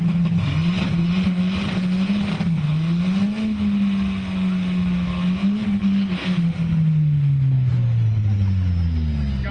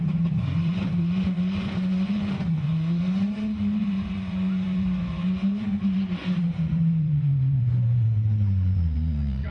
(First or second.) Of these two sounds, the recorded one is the first